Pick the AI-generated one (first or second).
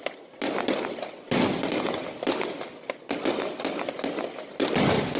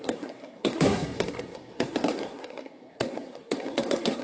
second